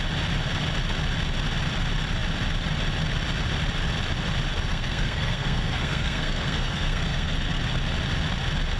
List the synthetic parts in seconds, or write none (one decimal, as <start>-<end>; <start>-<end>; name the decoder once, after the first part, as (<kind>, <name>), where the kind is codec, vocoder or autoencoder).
4.7-7.6 (codec, SNAC)